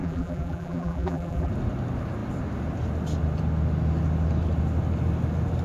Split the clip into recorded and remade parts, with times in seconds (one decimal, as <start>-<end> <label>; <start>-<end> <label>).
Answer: 0.0-1.5 remade; 1.5-5.6 recorded